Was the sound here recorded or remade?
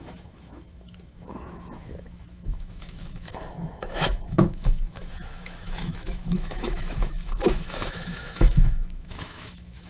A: remade